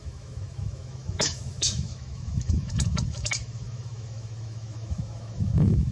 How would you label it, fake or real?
fake